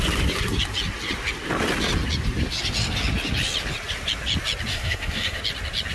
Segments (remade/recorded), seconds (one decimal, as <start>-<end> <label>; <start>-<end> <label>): 0.0-4.7 recorded; 4.7-5.4 remade; 5.4-5.9 recorded